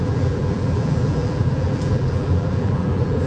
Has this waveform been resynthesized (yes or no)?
yes